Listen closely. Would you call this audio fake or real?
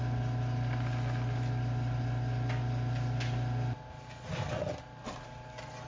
real